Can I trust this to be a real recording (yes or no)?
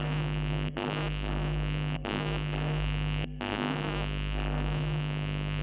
no